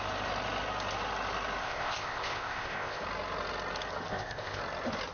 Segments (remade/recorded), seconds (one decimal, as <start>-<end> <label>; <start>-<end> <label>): 0.0-1.6 recorded; 1.6-3.0 remade; 3.0-4.1 recorded; 4.1-4.6 remade; 4.6-5.1 recorded